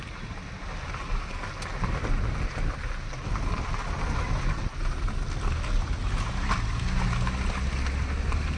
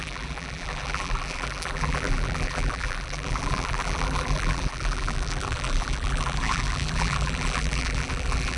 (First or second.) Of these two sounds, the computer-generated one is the second